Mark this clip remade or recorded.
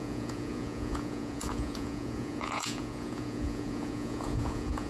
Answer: remade